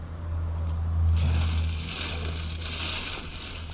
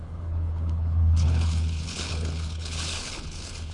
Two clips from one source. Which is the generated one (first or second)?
second